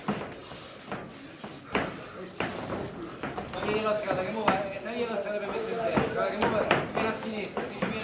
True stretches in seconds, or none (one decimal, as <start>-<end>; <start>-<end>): 0.0-8.0